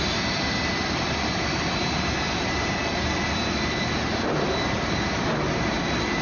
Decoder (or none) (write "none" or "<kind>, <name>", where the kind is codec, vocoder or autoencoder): vocoder, BigVGAN v2